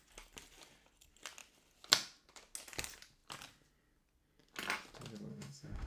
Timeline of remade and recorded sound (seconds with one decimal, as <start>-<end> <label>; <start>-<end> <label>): 0.0-5.3 recorded; 5.3-5.9 remade